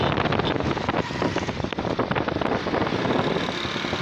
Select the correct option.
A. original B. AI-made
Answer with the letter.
A